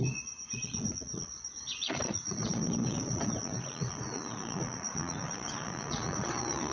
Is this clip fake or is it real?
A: fake